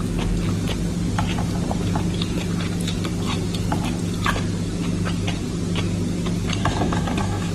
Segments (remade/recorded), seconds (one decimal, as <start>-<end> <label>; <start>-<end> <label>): 0.0-6.6 recorded; 6.6-7.5 remade